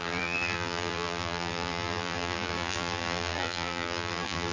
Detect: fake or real fake